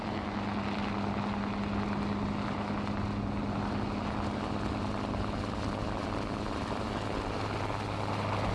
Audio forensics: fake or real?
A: real